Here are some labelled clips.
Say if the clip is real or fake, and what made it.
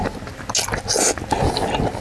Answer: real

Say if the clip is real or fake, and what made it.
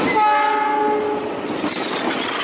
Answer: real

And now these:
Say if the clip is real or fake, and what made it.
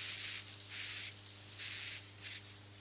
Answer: real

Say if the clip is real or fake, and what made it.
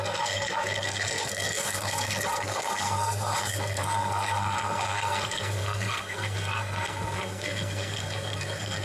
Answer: fake, codec, SNAC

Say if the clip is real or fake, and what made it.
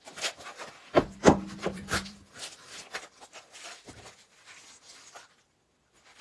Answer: fake, vocoder, BigVGAN v2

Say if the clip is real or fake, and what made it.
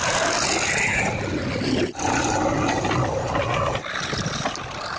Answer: real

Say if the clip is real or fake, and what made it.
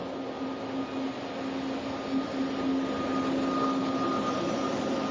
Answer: real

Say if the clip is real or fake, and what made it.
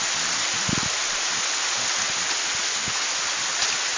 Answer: real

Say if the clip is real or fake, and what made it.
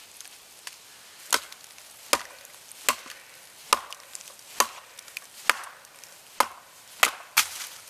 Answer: real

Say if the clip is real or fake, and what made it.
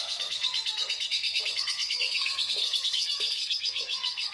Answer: fake, codec, SNAC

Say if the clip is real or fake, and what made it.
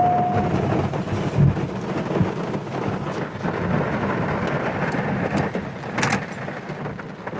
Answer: real